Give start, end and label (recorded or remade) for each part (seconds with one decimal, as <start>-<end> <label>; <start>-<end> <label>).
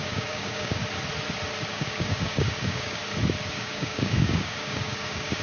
0.0-0.8 remade; 0.8-1.7 recorded; 1.7-3.0 remade; 3.0-3.5 recorded; 3.5-5.4 remade